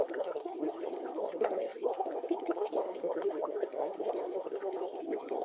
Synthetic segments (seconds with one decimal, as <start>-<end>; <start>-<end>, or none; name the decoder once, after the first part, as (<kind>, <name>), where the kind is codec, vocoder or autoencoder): 0.0-5.4 (codec, SNAC)